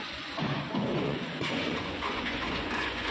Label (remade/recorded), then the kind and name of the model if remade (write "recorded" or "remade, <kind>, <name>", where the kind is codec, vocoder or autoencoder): remade, vocoder, Vocos